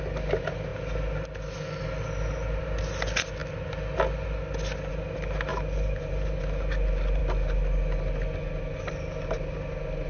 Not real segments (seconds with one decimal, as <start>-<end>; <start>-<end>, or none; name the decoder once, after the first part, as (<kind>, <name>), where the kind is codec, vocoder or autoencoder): 5.5-6.4 (vocoder, BigVGAN v2)

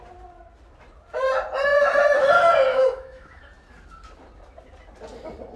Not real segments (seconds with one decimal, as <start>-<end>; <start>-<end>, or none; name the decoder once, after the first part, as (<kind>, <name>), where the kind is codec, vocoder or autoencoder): 2.7-3.4 (autoencoder, DAC-VAE)

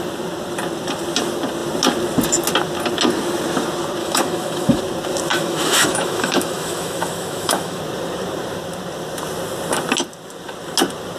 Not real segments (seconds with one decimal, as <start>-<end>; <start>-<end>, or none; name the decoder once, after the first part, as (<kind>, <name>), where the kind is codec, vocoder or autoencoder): 4.0-4.8 (autoencoder, DAC-VAE); 5.3-7.8

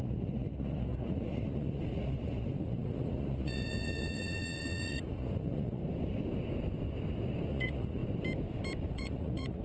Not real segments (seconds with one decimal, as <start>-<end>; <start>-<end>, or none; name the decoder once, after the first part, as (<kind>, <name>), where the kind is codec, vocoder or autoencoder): 0.0-5.8 (vocoder, Vocos); 7.5-8.0; 8.9-9.6